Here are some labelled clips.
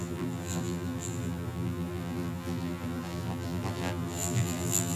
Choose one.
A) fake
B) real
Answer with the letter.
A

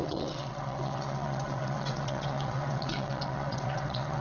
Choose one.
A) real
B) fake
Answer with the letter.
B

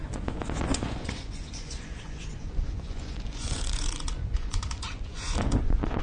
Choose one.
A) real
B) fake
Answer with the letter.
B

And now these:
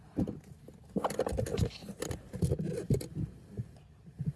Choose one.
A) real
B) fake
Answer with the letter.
A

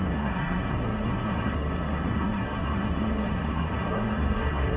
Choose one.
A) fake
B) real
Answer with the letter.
A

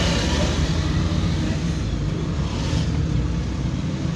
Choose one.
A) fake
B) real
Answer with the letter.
B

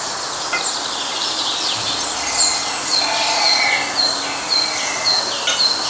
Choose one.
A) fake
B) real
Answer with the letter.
B